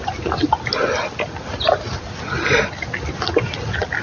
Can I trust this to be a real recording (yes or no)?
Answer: yes